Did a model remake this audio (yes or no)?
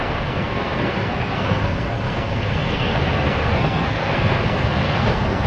yes